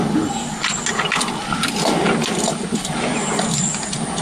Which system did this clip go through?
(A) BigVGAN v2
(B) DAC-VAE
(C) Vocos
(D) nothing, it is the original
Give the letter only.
D